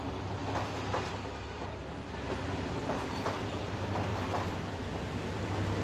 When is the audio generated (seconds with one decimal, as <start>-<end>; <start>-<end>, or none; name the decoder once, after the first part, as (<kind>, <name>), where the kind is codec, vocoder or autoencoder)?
4.1-4.7 (vocoder, BigVGAN v2)